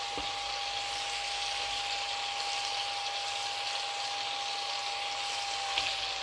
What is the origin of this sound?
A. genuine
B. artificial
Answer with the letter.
A